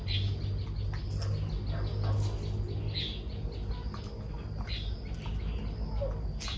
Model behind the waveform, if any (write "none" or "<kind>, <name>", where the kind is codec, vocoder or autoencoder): none